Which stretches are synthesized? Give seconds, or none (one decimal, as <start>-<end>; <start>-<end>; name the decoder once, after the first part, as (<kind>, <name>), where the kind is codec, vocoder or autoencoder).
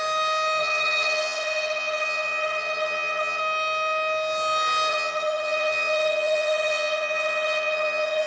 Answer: 0.6-3.4 (vocoder, HiFi-GAN); 4.9-8.3